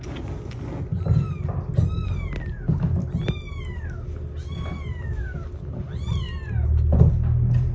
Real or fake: real